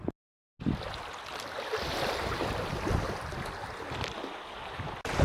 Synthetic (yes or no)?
no